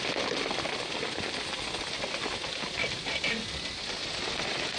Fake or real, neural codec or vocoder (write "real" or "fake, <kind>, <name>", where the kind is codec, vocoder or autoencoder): real